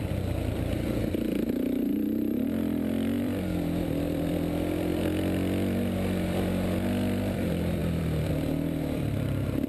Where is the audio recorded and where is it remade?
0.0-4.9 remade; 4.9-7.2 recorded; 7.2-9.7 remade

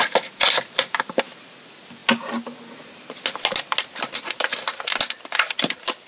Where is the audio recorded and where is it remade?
0.0-6.1 recorded